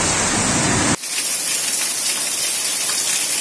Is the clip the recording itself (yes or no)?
yes